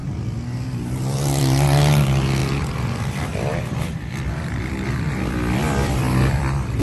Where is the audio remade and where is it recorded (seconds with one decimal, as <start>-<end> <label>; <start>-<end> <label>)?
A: 0.0-2.4 recorded; 2.4-6.8 remade